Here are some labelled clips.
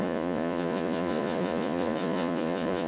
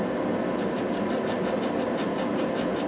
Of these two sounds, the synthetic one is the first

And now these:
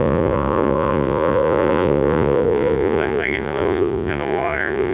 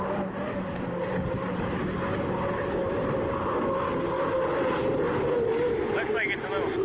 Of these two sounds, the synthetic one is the first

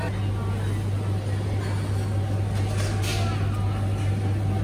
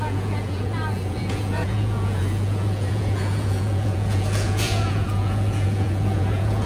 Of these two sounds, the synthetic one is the second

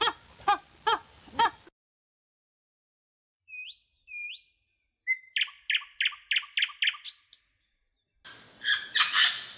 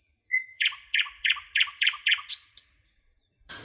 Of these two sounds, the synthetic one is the second